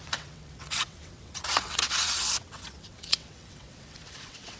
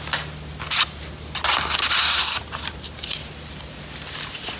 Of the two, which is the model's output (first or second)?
first